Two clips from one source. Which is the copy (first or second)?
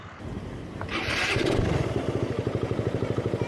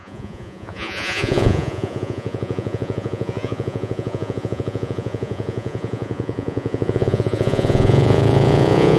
second